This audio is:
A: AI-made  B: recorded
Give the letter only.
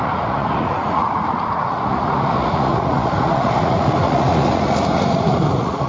A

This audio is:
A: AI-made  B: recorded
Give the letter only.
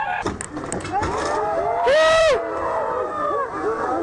B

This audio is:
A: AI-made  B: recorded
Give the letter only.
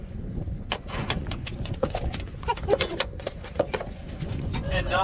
A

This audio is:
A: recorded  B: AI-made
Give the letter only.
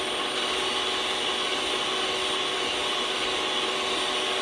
A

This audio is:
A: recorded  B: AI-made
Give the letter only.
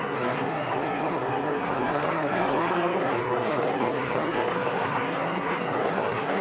B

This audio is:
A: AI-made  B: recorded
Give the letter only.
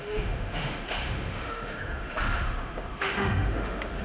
A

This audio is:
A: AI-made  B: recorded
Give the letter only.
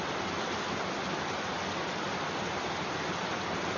B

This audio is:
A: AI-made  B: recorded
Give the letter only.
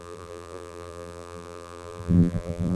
A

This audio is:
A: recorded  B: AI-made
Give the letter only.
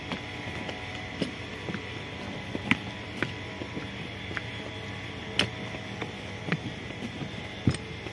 A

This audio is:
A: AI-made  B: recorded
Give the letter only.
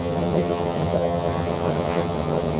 A